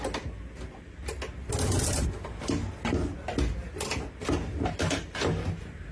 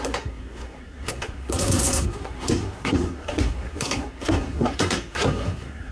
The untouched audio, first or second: first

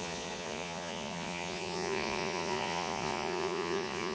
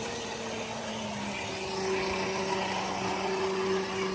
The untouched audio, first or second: second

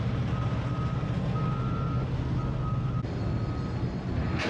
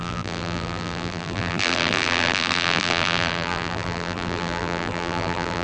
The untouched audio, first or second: first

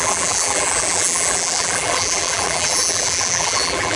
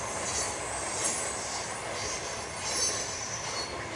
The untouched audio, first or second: second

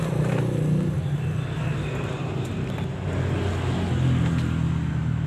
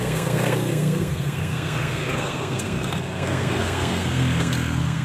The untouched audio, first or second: first